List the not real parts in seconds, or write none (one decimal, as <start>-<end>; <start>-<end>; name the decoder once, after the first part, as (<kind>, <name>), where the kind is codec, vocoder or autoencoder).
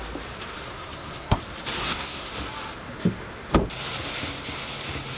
0.7-1.4 (codec, SNAC); 1.8-2.3